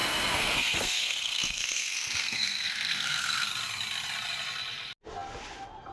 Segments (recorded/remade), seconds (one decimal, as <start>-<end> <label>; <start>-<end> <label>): 0.0-3.5 remade; 3.5-5.9 recorded